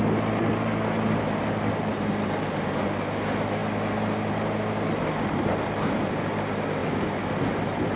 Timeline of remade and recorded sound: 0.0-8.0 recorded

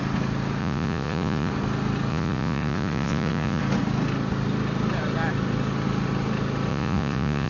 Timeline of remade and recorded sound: 0.0-0.6 recorded; 0.6-1.5 remade; 1.5-2.1 recorded; 2.1-3.6 remade; 3.6-6.7 recorded; 6.7-7.5 remade

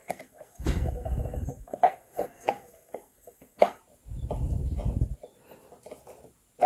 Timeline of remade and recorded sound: 0.0-3.8 remade; 3.8-6.7 recorded

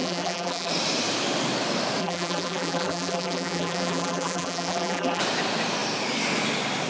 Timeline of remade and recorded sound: 0.0-0.7 remade; 0.7-2.0 recorded; 2.0-5.2 remade; 5.2-6.9 recorded